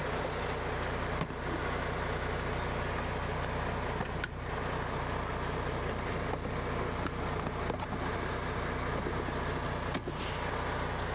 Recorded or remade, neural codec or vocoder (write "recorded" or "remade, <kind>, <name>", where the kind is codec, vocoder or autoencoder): recorded